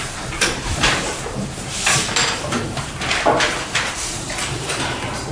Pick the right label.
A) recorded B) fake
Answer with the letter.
B